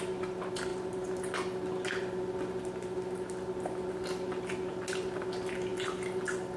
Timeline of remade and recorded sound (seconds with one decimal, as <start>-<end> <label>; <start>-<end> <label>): 0.0-5.7 recorded; 5.7-6.6 remade